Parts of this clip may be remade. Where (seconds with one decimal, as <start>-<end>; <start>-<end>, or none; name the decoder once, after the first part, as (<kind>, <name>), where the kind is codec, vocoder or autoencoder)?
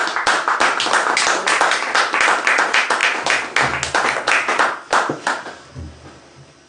none